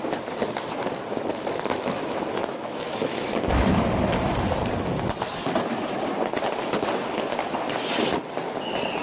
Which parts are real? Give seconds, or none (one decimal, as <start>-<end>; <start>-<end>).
0.0-1.1; 3.8-9.0